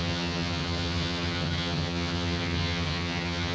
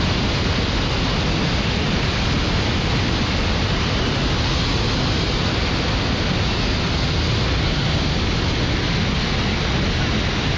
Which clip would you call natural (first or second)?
second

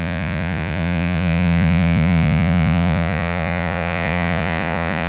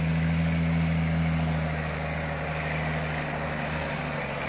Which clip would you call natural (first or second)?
second